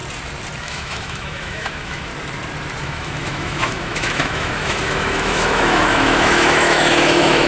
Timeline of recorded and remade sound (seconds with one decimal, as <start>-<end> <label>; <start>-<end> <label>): 0.0-0.6 recorded; 0.6-2.1 remade; 2.1-2.8 recorded; 2.8-7.5 remade